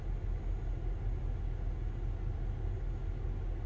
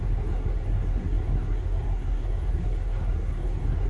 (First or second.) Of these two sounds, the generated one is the second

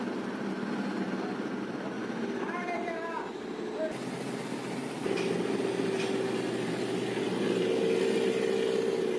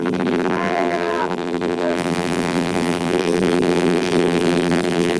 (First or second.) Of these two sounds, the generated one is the second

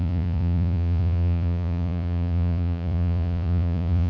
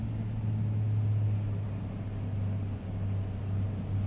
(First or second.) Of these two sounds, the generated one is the first